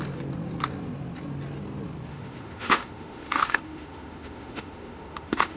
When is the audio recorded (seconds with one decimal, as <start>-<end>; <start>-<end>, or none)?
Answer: 0.0-2.1